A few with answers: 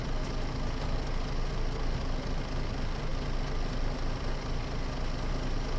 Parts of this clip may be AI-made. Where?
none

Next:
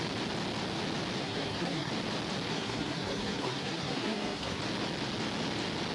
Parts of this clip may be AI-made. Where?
1.2-1.9 (codec, SNAC); 2.5-4.6

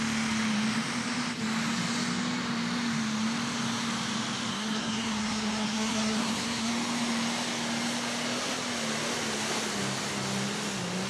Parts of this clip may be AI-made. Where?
4.5-6.7 (codec, SNAC)